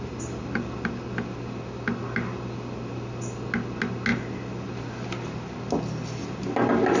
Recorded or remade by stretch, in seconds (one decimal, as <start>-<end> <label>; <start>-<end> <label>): 0.0-7.0 recorded